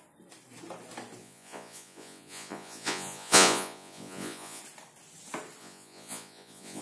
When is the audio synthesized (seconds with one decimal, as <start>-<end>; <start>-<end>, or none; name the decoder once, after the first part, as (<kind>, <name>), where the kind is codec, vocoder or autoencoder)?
1.2-4.6 (vocoder, Vocos); 5.6-6.8